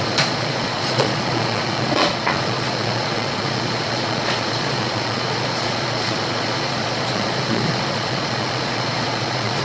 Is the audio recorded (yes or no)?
no